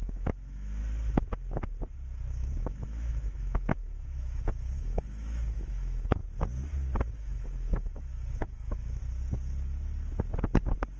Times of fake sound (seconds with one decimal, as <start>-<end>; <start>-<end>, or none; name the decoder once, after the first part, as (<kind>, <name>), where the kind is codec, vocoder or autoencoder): 0.0-0.8 (autoencoder, DAC-VAE); 2.3-6.2; 7.1-9.0